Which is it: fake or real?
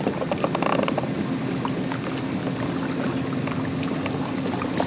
real